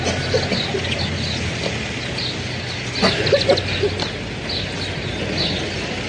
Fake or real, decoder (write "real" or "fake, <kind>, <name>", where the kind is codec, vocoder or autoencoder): real